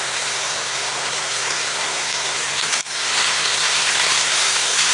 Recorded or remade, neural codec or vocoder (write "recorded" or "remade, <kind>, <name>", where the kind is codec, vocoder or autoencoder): remade, codec, SNAC